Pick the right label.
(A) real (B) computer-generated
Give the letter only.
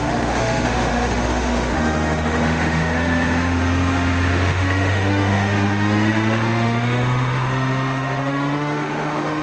B